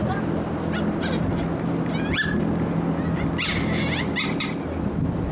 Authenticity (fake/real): real